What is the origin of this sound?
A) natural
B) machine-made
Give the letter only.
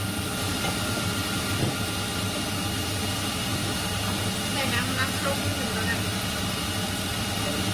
A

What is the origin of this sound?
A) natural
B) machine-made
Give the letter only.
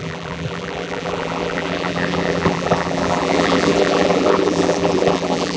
B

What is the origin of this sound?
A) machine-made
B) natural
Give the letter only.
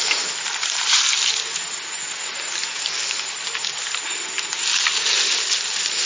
B